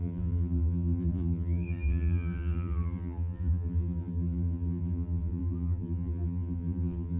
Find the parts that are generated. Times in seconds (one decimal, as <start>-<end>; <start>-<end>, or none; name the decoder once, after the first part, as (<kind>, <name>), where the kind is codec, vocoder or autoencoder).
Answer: 0.0-7.2 (vocoder, BigVGAN v2)